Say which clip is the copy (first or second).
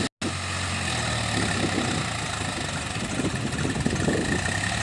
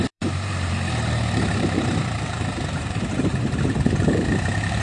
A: second